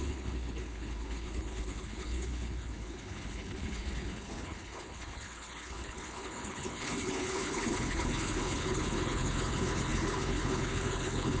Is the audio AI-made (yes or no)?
yes